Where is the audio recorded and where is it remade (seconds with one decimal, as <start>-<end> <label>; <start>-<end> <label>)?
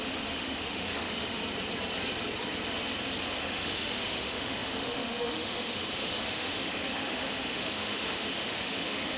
0.0-1.4 remade; 1.4-3.4 recorded; 3.4-9.2 remade